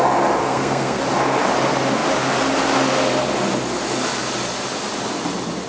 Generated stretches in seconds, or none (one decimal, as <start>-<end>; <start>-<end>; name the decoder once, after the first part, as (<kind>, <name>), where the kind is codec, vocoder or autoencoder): 0.4-1.0 (codec, SNAC)